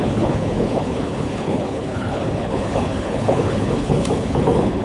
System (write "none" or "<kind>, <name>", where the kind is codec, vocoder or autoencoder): codec, HILCodec